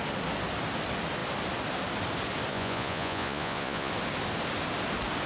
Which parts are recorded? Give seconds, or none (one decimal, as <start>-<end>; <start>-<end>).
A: 0.0-2.5; 3.9-5.3